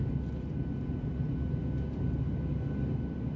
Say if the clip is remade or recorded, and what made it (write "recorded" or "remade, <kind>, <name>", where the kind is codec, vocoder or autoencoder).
recorded